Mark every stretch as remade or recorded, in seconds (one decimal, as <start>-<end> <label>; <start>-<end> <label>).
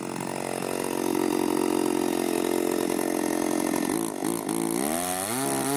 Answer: 0.0-5.8 recorded